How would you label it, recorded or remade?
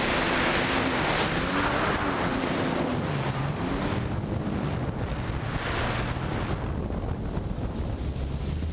recorded